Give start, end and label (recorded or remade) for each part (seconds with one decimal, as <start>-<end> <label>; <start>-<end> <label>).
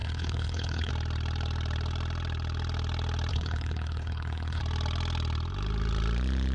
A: 0.0-0.9 remade; 0.9-3.3 recorded; 3.3-4.6 remade; 4.6-6.5 recorded